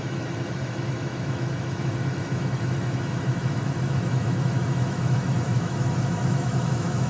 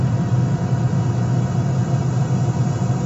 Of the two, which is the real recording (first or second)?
second